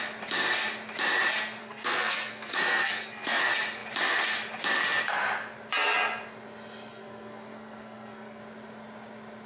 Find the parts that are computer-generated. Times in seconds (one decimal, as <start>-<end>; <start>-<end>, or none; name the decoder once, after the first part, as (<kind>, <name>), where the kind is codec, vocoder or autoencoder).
1.6-3.4 (codec, SNAC); 6.9-8.4